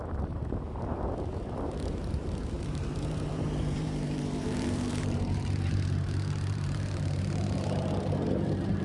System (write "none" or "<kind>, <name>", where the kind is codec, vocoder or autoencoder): vocoder, BigVGAN v2